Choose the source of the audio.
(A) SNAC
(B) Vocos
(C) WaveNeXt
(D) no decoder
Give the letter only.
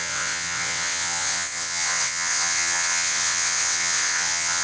C